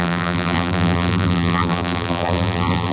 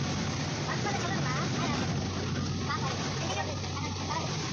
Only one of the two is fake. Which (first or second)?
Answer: first